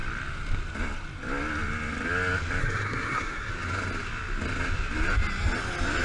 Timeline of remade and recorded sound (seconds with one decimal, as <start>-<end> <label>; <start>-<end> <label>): 0.0-2.6 recorded; 2.6-3.5 remade; 3.5-6.0 recorded